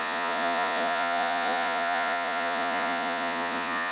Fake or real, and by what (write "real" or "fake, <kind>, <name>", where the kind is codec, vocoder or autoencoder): fake, vocoder, Vocos